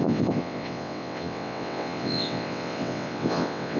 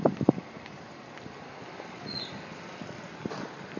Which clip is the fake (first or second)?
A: first